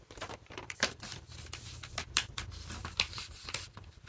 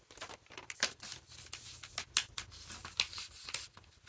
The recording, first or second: second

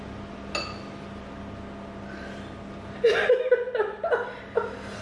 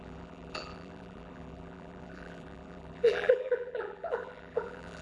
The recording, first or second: first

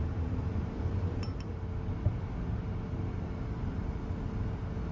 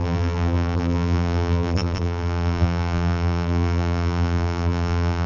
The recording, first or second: first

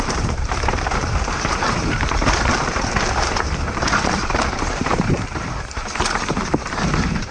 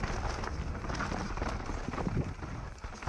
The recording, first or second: second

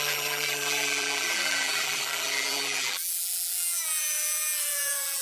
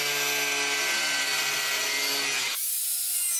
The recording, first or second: second